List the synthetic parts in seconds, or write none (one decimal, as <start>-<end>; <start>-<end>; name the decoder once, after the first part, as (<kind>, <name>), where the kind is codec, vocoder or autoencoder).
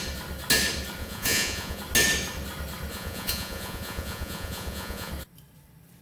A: 1.0-1.8 (vocoder, Vocos); 2.9-5.1